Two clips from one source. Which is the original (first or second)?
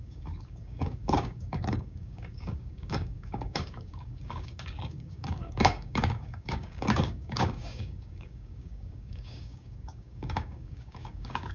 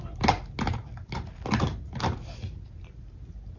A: second